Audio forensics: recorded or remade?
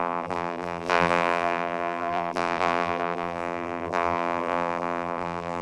remade